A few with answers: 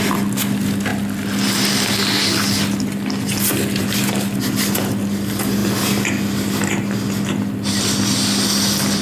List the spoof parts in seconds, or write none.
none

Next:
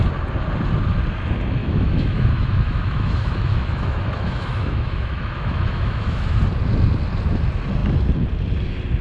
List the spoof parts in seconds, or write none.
1.6-6.4 (autoencoder, DAC-VAE)

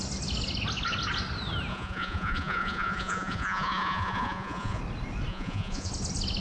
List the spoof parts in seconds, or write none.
1.7-4.8 (vocoder, Vocos); 5.3-5.9

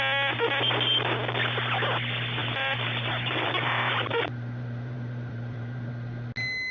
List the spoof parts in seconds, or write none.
2.4-5.9 (vocoder, BigVGAN v2)

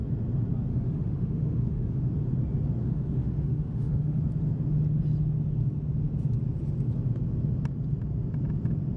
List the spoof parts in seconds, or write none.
0.7-2.1 (autoencoder, DAC-VAE); 2.8-4.2

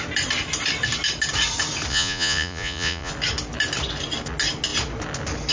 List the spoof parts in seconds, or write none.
1.9-3.1 (vocoder, Vocos)

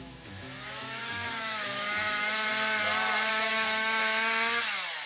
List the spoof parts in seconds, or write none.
0.0-2.5 (autoencoder, DAC-VAE); 3.3-4.0